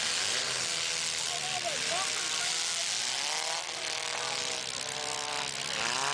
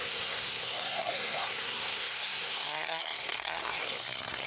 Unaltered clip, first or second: first